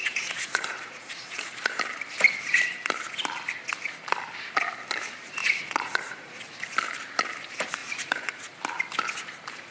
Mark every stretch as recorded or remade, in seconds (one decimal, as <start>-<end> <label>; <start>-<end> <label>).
0.0-1.8 remade; 1.8-5.4 recorded; 5.4-6.4 remade; 6.4-7.8 recorded; 7.8-8.4 remade; 8.4-9.7 recorded